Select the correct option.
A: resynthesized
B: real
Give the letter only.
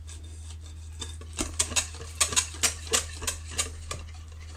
B